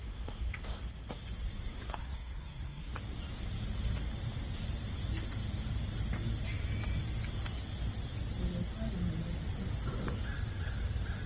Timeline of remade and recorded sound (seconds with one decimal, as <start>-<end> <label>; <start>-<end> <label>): 0.0-2.0 recorded; 2.0-2.9 remade; 2.9-11.3 recorded